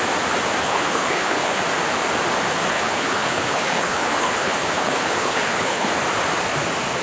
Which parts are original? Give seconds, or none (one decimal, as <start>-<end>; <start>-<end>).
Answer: 0.0-0.6; 1.6-2.7; 5.9-7.0